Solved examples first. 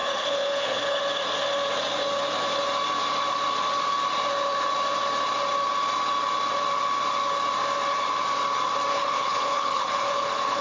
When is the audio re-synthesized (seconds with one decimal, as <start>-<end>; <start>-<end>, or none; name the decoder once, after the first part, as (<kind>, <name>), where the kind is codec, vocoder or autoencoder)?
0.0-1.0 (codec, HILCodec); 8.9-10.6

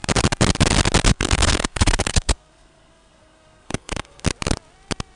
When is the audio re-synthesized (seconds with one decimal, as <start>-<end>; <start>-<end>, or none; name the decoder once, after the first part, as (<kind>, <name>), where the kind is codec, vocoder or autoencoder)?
1.1-4.2 (codec, SNAC)

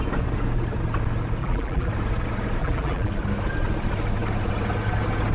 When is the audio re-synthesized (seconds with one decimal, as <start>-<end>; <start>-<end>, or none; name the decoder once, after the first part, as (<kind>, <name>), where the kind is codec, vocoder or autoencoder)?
1.4-1.9 (vocoder, BigVGAN v2); 2.6-3.1